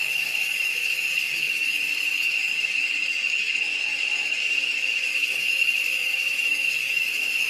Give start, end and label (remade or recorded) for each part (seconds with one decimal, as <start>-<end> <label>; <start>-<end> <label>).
0.0-7.5 remade